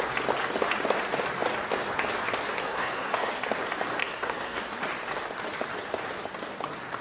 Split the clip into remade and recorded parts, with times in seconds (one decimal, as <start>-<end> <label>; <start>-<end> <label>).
0.0-2.6 recorded; 2.6-3.3 remade; 3.3-4.0 recorded; 4.0-4.6 remade; 4.6-7.0 recorded